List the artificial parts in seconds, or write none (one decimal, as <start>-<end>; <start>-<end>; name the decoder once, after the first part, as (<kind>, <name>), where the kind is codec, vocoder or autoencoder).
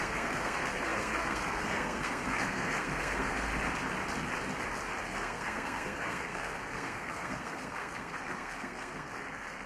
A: 0.0-3.5 (codec, SNAC); 5.0-9.7